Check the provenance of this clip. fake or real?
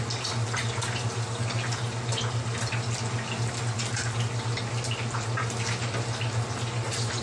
real